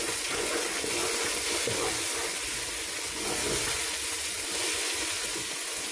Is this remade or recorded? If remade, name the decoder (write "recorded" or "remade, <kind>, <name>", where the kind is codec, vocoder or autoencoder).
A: remade, vocoder, Vocos